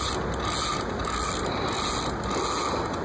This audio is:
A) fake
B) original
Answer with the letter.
B